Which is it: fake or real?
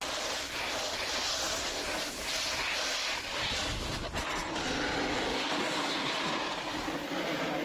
real